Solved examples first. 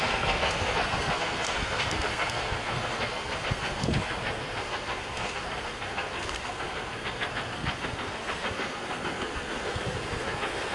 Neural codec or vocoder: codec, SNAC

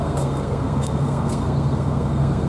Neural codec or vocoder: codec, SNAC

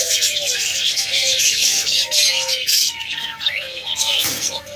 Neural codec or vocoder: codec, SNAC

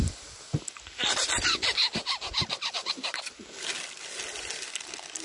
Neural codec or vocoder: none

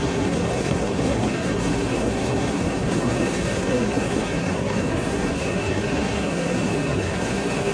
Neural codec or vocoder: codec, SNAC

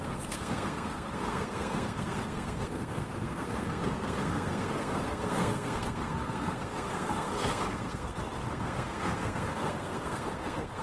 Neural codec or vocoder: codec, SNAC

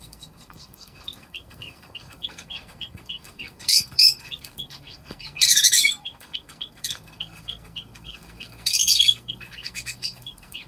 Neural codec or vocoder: codec, SNAC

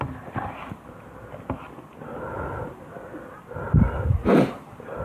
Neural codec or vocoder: none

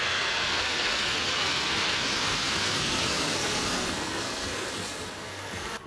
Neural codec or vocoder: codec, SNAC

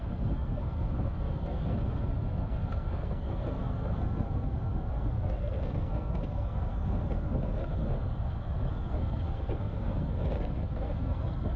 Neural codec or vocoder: codec, SNAC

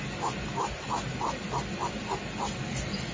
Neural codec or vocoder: none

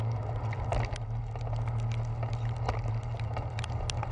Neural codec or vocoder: none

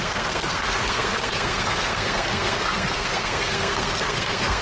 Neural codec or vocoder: codec, SNAC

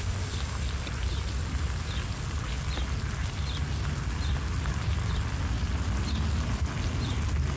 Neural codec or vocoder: none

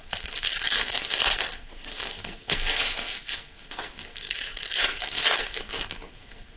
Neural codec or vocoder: codec, SNAC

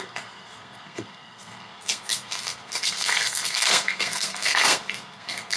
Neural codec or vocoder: codec, SNAC